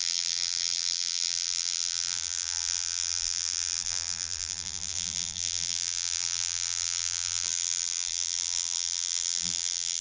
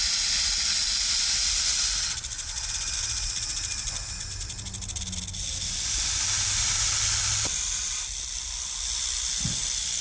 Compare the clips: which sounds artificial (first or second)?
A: first